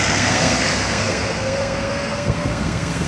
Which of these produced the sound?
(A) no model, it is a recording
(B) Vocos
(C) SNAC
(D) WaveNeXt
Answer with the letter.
C